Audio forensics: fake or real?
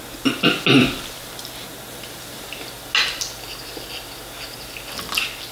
real